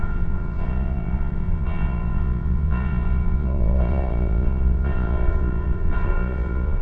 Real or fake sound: fake